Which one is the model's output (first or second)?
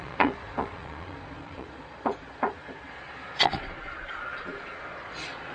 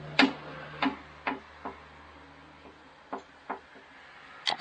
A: first